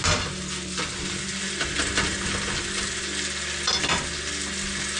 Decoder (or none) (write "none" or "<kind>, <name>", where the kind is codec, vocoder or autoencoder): none